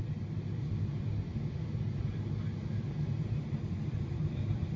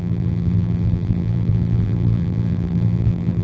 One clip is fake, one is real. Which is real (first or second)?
first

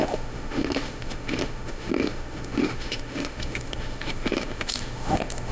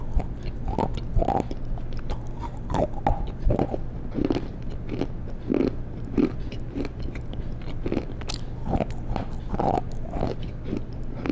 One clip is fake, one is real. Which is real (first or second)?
second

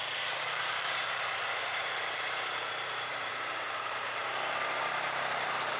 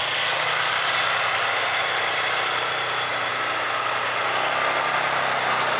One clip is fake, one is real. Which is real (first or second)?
second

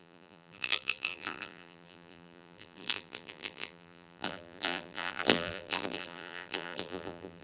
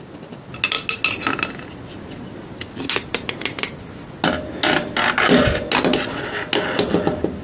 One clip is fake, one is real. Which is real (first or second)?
second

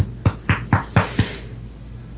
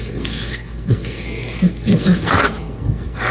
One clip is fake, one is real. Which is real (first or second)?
first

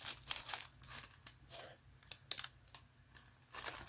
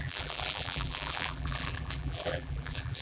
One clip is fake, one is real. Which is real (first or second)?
first